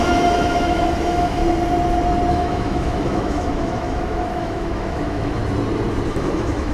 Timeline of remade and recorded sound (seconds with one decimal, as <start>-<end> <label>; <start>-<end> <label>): 0.0-1.4 remade; 1.4-2.3 recorded; 2.3-5.4 remade; 5.4-6.1 recorded; 6.1-6.7 remade